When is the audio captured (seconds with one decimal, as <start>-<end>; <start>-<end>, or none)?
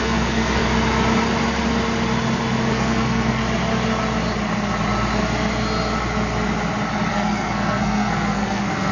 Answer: 0.6-2.7; 3.4-7.1